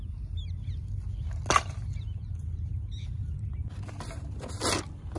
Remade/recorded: recorded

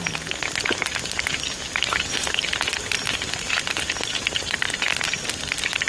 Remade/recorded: recorded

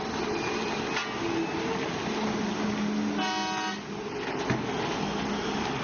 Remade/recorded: recorded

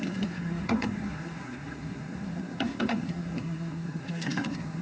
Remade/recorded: remade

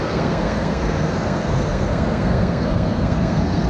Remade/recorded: remade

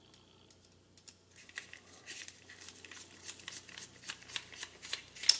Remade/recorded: recorded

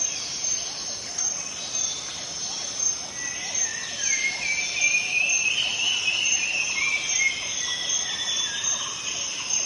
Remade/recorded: recorded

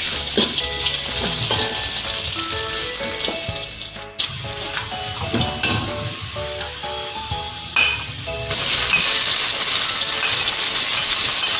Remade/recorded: recorded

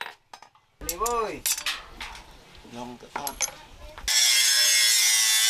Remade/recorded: recorded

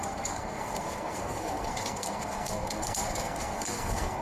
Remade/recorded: remade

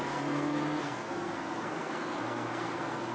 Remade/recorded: remade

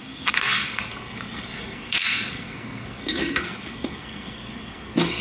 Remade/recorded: remade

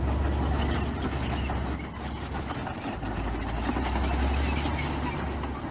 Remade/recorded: recorded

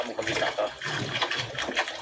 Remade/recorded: recorded